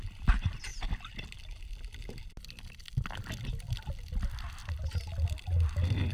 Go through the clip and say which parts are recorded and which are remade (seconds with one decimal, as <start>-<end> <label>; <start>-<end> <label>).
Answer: 0.0-6.1 recorded